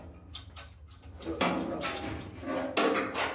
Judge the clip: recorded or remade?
recorded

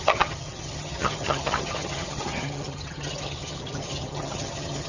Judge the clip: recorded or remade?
remade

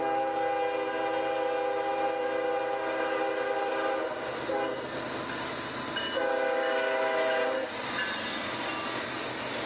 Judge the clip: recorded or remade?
recorded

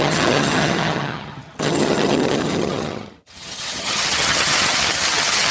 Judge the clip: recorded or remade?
remade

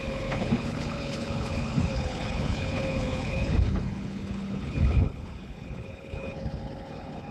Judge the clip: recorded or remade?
remade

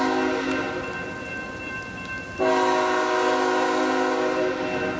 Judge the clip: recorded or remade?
recorded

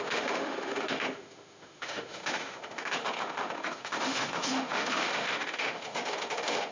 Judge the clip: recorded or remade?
remade